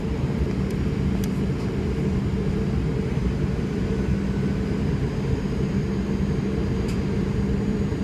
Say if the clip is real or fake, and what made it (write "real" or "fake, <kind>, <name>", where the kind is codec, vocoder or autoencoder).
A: real